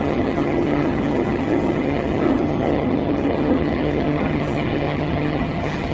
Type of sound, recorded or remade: remade